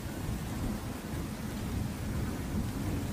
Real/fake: real